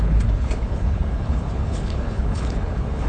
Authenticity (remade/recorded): remade